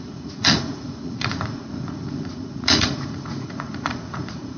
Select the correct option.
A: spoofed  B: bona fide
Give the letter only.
A